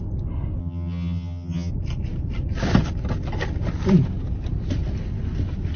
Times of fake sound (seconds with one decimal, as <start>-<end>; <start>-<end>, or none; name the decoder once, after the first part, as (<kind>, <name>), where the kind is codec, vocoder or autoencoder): 0.6-1.7 (vocoder, HiFi-GAN)